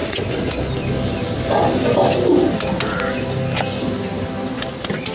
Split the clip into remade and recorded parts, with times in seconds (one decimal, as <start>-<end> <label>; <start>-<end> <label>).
0.0-0.5 remade; 0.5-5.1 recorded